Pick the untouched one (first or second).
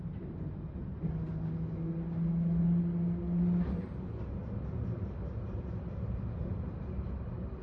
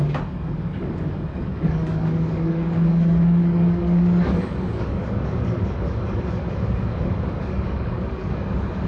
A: first